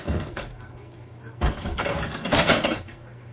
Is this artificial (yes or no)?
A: yes